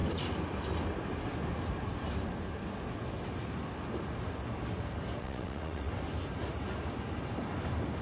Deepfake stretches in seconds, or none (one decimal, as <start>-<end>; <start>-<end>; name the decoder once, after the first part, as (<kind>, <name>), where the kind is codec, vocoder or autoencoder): 5.2-5.9 (vocoder, WaveNeXt)